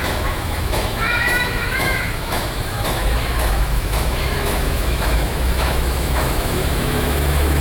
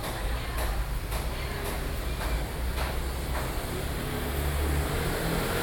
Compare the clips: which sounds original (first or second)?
second